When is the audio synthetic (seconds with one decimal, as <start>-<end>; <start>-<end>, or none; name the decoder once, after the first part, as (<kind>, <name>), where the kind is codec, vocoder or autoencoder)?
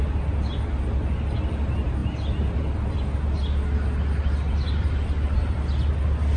none